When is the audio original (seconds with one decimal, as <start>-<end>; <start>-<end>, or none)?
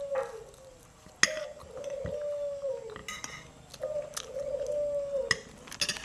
0.0-6.0